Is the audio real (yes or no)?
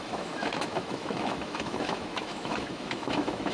no